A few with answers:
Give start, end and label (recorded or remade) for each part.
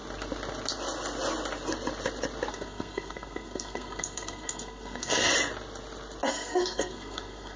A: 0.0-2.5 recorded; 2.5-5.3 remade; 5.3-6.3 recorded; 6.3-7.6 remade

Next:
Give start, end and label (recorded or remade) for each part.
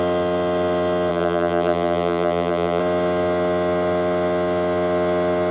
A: 0.0-1.1 recorded; 1.1-2.8 remade; 2.8-5.5 recorded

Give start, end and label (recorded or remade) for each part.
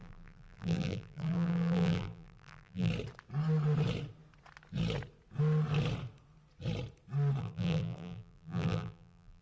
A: 0.0-2.9 remade; 2.9-7.4 recorded; 7.4-9.4 remade